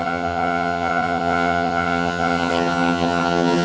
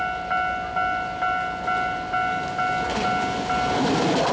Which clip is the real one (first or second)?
second